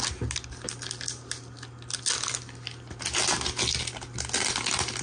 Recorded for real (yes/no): yes